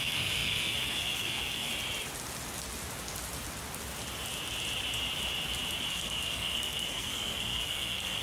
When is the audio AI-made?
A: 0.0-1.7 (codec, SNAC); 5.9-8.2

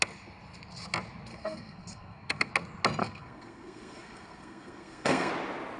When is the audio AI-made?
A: 1.3-2.5 (codec, SNAC); 3.0-5.3

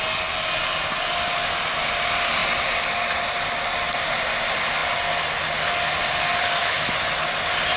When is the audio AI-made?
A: 6.6-7.1 (autoencoder, DAC-VAE)

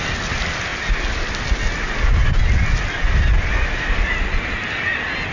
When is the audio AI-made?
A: none

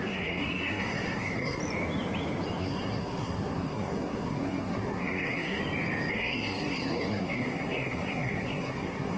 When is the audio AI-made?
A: 0.0-1.6 (codec, SNAC); 2.6-5.6; 6.1-9.2

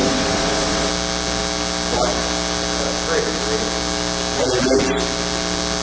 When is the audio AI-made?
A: 0.0-0.9 (vocoder, WaveNeXt)

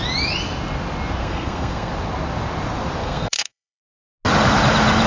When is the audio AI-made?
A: 1.2-1.9 (codec, SNAC); 3.0-3.8

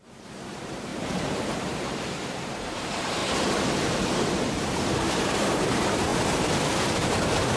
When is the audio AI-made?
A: 0.0-3.2 (vocoder, BigVGAN v2); 4.5-6.1